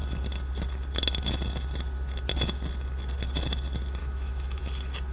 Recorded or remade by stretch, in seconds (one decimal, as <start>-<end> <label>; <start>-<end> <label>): 0.0-4.0 recorded; 4.0-4.6 remade; 4.6-5.1 recorded